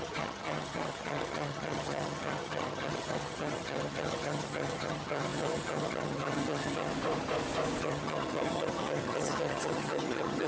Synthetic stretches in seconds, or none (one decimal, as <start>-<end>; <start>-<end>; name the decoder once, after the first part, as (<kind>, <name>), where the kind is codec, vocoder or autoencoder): 0.0-6.9 (vocoder, HiFi-GAN); 7.8-10.5